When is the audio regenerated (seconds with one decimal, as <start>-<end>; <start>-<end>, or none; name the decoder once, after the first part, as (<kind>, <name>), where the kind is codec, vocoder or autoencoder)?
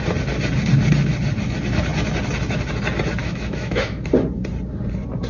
3.2-4.1 (autoencoder, DAC-VAE)